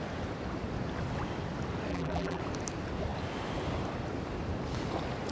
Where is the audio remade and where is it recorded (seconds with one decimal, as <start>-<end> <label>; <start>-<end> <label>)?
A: 0.0-1.9 recorded; 1.9-2.4 remade; 2.4-5.3 recorded